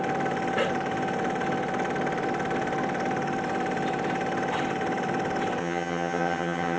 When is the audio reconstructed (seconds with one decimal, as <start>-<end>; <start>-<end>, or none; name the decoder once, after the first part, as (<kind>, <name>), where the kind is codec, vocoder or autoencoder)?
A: 5.6-6.8 (vocoder, HiFi-GAN)